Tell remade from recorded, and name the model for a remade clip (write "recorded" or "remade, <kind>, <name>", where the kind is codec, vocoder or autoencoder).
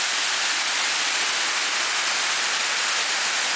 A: recorded